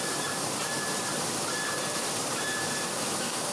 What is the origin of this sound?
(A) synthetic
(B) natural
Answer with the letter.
A